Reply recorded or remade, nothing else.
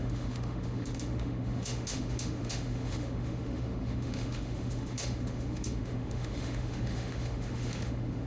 remade